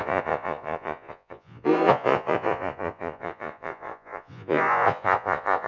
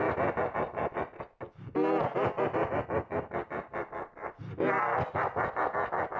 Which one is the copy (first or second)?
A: first